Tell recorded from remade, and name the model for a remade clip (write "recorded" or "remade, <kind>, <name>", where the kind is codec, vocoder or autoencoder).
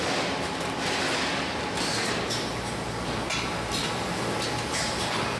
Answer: recorded